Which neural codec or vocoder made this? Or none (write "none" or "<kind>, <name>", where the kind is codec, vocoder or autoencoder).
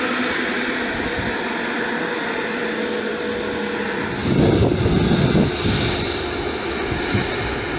none